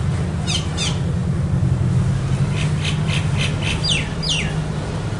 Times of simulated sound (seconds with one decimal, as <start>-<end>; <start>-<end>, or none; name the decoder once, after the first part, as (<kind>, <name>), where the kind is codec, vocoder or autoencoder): none